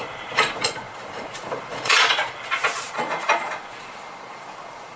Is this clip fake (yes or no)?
yes